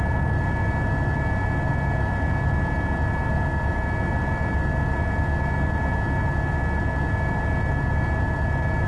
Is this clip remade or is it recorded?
recorded